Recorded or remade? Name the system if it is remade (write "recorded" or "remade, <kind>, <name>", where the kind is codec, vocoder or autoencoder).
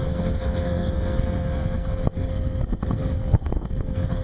remade, codec, SNAC